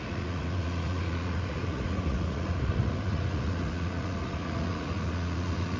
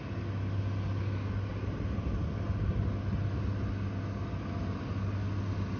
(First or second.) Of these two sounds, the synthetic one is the first